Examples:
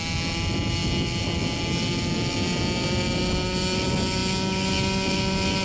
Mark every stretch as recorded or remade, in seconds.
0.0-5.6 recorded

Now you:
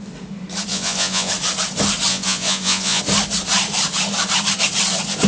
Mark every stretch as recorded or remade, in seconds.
0.0-0.7 recorded; 0.7-1.3 remade; 1.3-2.1 recorded; 2.1-3.0 remade; 3.0-5.3 recorded

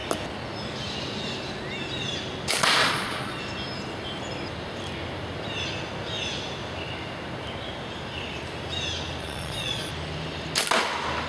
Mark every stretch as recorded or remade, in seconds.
0.0-2.8 recorded; 2.8-3.4 remade; 3.4-9.2 recorded; 9.2-9.9 remade; 9.9-11.3 recorded

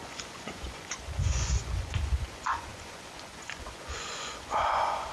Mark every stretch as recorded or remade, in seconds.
0.0-5.1 remade

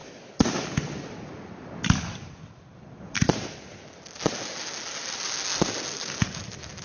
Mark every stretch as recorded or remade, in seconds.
0.0-6.8 recorded